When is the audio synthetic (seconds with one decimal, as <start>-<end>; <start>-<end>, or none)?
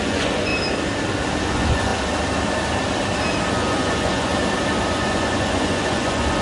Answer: 0.0-0.5; 1.4-1.9; 3.5-4.3; 4.9-6.4